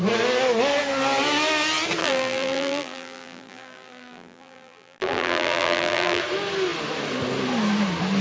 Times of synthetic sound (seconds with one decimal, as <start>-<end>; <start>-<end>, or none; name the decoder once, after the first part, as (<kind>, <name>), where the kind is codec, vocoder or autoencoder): 2.0-6.2 (vocoder, BigVGAN v2)